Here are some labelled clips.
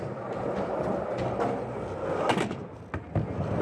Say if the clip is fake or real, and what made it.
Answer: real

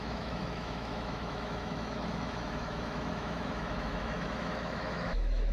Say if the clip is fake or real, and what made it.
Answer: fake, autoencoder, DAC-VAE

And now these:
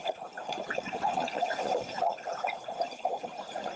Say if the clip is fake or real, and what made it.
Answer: fake, vocoder, Vocos